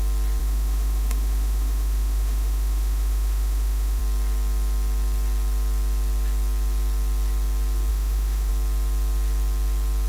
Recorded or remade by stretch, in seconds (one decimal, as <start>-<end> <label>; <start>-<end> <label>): 0.0-0.4 recorded; 0.4-4.0 remade; 4.0-7.9 recorded; 7.9-8.5 remade; 8.5-10.1 recorded